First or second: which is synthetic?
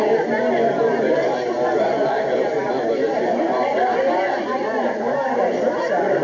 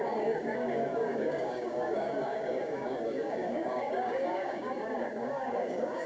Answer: second